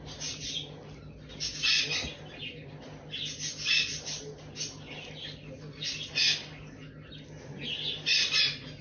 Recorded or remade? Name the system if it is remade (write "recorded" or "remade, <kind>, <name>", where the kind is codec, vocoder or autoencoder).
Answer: recorded